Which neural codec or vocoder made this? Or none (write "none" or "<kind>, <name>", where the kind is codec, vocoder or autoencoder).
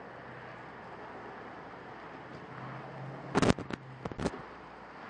none